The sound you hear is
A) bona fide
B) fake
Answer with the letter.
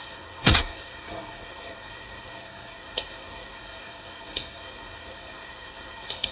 B